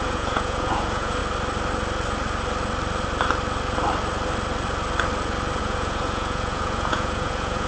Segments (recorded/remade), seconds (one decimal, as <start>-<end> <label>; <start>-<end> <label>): 0.0-1.2 remade; 1.2-5.6 recorded; 5.6-7.7 remade